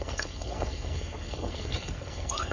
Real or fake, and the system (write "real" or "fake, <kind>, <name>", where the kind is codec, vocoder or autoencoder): fake, codec, SNAC